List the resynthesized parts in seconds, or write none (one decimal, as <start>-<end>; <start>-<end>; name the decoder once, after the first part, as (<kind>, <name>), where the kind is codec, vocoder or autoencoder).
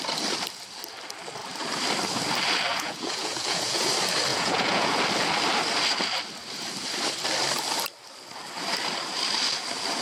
2.7-3.9 (vocoder, Vocos); 4.3-5.0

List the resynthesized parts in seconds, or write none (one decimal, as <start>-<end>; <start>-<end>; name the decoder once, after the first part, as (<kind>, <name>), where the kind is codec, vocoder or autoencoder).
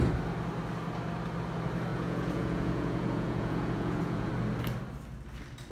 1.9-4.3 (vocoder, Vocos)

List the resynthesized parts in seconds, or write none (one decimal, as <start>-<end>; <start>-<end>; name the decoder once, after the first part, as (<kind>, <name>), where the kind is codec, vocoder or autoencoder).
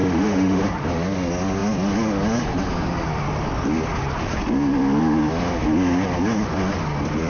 0.0-0.6 (autoencoder, DAC-VAE)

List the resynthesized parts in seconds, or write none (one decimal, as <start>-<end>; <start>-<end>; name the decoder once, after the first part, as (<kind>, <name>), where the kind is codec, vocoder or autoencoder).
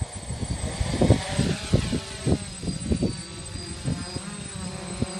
0.0-0.4 (vocoder, Vocos); 2.5-3.9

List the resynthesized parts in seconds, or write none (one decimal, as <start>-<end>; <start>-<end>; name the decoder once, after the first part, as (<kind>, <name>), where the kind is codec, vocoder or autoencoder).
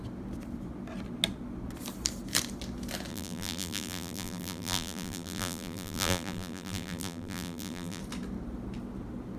3.1-8.0 (vocoder, BigVGAN v2)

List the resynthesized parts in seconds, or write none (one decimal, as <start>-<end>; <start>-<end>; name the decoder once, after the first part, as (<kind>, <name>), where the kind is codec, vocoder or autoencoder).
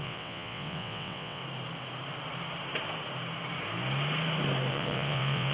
0.0-1.4 (vocoder, WaveNeXt); 4.7-5.5